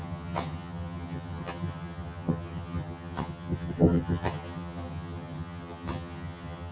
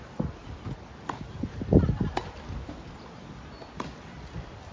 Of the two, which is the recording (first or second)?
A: second